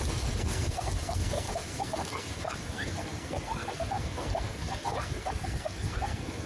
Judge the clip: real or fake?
fake